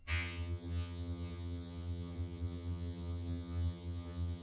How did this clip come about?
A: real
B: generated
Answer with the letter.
B